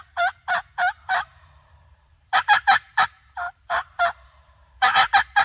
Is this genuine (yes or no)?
no